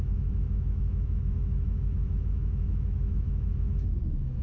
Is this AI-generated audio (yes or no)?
yes